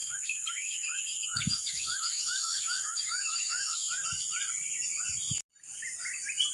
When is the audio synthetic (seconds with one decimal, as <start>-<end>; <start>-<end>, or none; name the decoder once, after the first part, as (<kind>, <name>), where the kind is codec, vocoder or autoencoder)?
0.0-3.9 (autoencoder, DAC-VAE)